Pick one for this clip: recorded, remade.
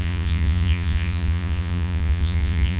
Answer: remade